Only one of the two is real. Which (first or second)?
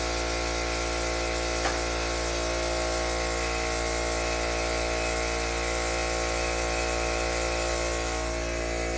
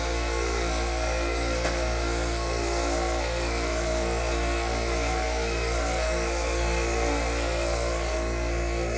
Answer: first